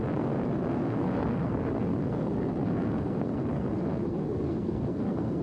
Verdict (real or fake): fake